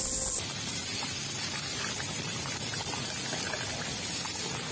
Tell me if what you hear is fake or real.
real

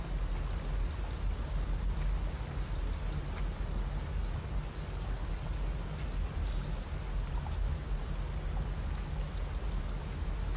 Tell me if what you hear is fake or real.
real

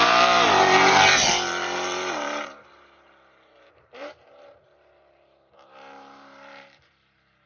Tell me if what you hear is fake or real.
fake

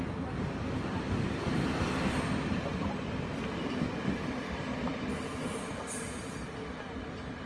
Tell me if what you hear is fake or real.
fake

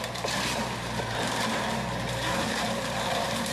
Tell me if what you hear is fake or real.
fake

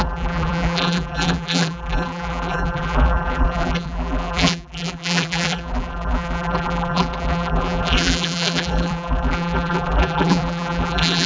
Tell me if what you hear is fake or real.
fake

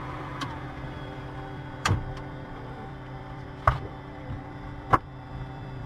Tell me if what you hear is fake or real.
fake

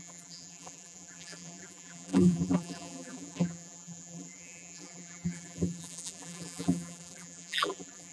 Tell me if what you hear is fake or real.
fake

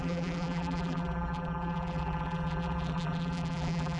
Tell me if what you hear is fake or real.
fake